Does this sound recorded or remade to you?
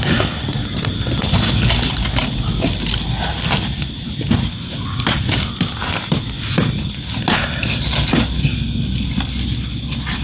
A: recorded